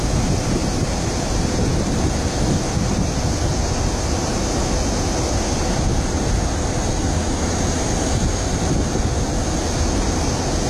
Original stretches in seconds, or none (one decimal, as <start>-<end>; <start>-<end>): 0.0-10.7